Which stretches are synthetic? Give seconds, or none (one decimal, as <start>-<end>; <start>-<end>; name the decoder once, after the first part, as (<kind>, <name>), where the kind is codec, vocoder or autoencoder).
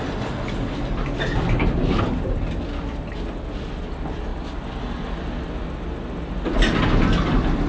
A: none